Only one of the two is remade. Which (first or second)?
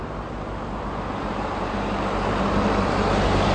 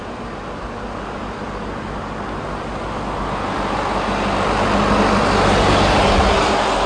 first